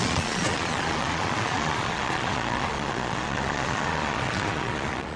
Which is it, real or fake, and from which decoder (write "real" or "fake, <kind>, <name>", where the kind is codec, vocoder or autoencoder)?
fake, vocoder, Vocos